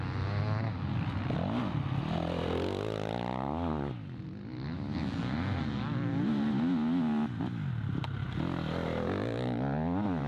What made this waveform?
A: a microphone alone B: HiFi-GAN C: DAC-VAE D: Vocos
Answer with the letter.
A